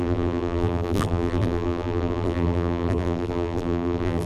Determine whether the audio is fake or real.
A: fake